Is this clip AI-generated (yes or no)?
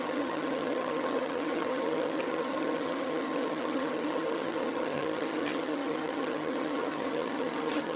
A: yes